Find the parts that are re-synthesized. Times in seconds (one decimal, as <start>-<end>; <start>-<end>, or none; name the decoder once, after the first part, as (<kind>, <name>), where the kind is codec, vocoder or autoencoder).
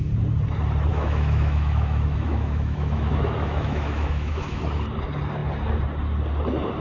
0.9-4.6 (autoencoder, DAC-VAE)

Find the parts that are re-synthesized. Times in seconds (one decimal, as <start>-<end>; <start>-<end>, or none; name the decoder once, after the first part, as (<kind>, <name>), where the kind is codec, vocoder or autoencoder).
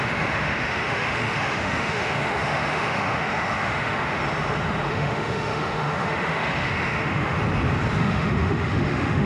0.0-4.2 (autoencoder, DAC-VAE); 4.9-7.4; 8.0-9.3